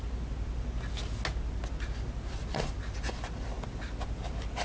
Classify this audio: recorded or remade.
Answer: recorded